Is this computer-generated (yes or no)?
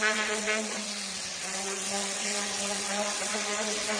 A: yes